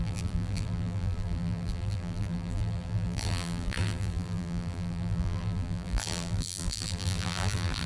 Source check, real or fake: fake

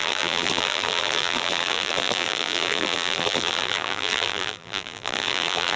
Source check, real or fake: fake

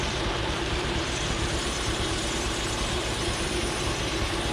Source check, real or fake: fake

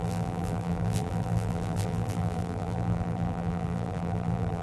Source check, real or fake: fake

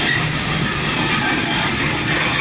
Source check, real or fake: real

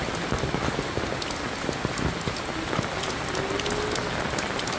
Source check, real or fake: real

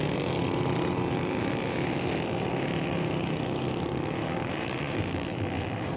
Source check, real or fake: fake